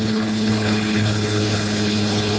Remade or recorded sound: remade